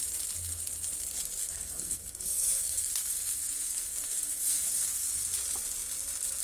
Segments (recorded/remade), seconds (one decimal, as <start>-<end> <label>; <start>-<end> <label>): 0.0-1.4 recorded; 1.4-5.2 remade; 5.2-6.4 recorded